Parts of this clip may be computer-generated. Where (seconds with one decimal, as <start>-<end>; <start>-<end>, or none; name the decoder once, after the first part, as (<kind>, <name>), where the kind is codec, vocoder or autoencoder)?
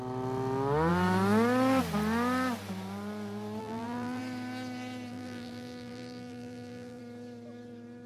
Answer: 3.6-4.2 (vocoder, BigVGAN v2); 5.1-7.0